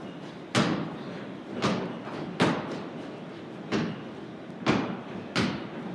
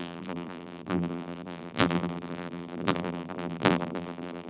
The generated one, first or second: second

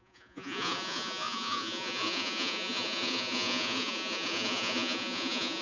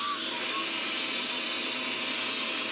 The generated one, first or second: first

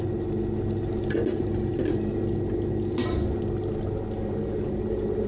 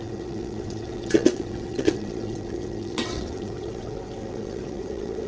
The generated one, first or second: second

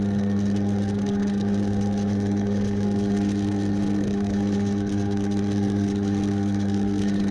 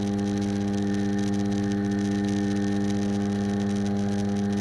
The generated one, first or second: first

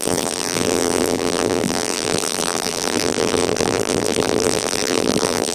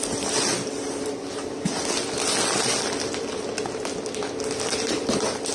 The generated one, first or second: first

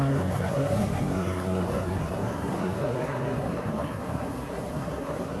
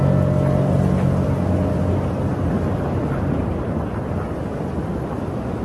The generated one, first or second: first